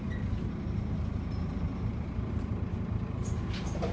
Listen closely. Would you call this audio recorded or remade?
remade